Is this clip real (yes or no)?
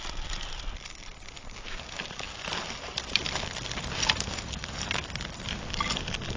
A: yes